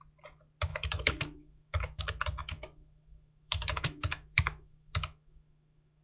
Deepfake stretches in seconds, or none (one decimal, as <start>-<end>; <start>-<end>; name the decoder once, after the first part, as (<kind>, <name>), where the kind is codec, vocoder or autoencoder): 0.7-2.0 (autoencoder, DAC-VAE); 2.4-6.0